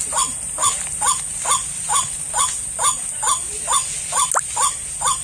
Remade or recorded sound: recorded